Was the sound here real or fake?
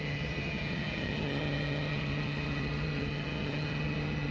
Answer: fake